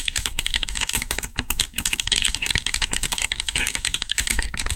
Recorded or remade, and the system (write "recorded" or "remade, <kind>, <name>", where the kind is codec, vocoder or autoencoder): remade, codec, DAC